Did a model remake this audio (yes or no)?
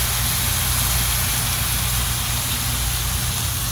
no